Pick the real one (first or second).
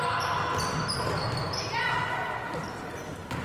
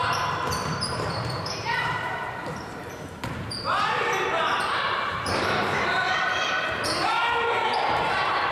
first